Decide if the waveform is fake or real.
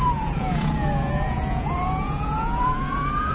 fake